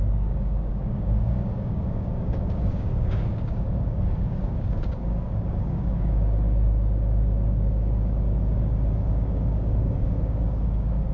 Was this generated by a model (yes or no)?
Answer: yes